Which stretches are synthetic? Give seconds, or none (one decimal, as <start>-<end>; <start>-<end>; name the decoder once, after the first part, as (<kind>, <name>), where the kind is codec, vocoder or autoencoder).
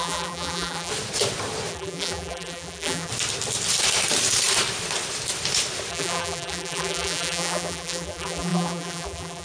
0.0-0.9 (vocoder, BigVGAN v2); 1.7-3.1; 5.9-9.4